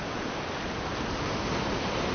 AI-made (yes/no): no